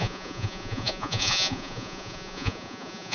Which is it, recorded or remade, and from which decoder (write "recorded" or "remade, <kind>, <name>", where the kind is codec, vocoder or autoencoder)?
remade, vocoder, Vocos